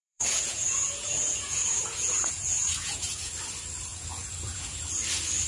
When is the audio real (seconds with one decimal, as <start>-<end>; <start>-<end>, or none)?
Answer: 3.3-3.9; 4.8-5.5